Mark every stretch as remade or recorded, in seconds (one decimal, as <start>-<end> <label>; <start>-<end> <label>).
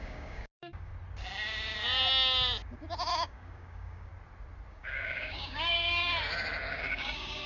0.0-0.9 remade; 0.9-3.1 recorded; 3.1-4.1 remade; 4.1-4.7 recorded; 4.7-6.0 remade; 6.0-6.8 recorded; 6.8-7.5 remade